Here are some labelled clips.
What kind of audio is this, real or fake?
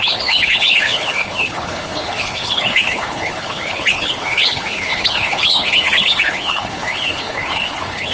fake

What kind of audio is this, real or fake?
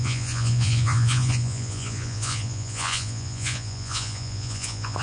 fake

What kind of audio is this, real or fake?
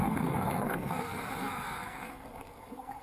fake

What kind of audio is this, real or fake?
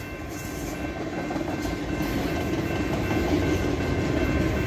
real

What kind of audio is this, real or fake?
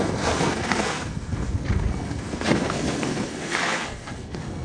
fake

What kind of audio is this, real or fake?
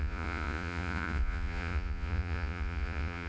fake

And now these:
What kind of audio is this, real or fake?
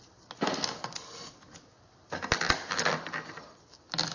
real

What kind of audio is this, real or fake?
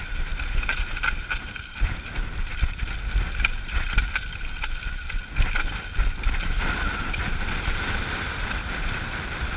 real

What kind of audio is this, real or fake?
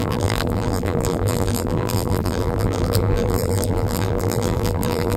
fake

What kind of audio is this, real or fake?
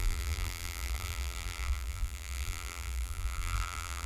fake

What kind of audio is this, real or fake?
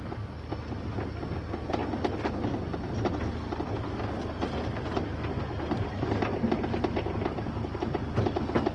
real